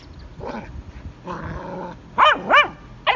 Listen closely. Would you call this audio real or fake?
real